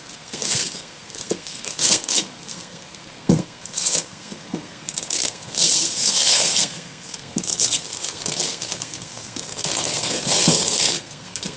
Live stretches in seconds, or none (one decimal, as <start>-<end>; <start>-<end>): none